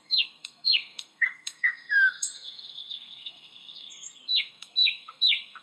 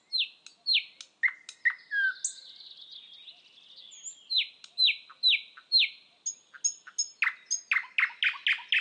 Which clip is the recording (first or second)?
second